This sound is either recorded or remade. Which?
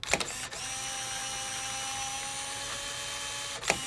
recorded